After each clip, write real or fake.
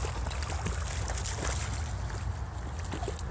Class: real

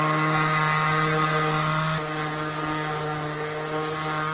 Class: real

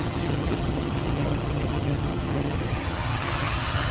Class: fake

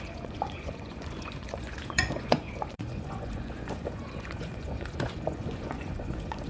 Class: fake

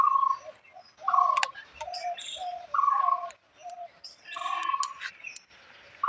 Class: real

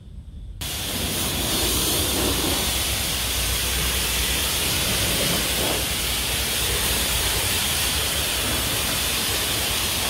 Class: fake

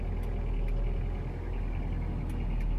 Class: real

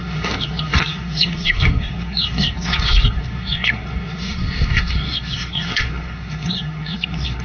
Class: fake